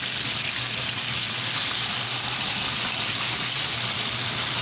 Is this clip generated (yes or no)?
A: no